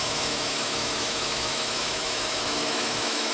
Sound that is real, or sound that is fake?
fake